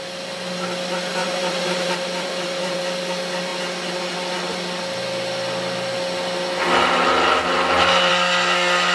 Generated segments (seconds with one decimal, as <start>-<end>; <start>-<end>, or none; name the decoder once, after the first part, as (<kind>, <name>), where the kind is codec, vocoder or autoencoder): 1.2-2.8 (vocoder, BigVGAN v2)